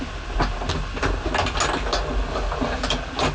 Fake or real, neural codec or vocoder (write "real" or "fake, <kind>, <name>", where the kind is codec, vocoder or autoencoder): real